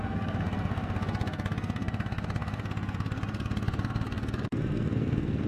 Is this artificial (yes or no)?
yes